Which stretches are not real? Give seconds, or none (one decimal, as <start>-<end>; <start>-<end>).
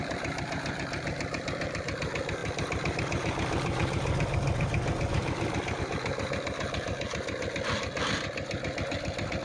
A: 2.4-5.8